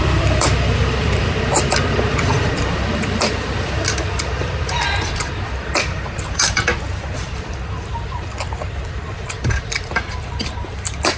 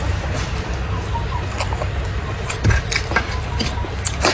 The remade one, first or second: first